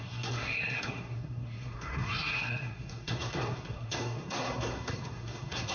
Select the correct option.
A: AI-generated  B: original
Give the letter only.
A